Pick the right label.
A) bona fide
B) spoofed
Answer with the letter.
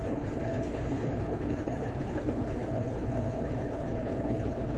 B